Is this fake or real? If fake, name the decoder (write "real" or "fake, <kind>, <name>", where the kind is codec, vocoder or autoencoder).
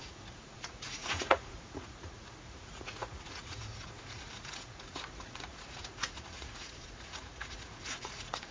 fake, vocoder, Vocos